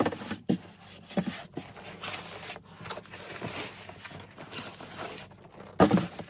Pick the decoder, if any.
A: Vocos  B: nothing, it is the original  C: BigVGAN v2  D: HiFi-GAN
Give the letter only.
B